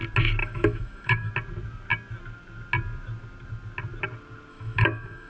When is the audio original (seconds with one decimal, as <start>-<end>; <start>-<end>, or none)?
0.0-0.4; 1.3-4.5